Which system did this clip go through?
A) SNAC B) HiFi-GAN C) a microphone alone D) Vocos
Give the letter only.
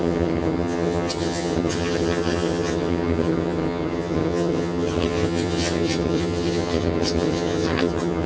B